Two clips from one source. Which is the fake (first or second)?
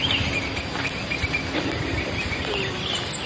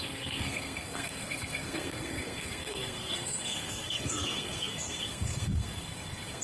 second